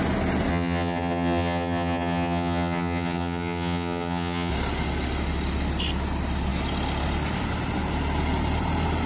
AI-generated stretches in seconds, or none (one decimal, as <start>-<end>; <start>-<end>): 0.5-4.5